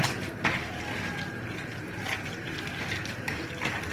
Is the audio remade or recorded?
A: recorded